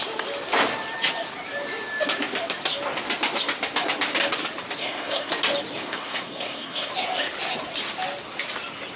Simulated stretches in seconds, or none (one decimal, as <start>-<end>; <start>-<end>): 4.8-5.3; 5.8-6.9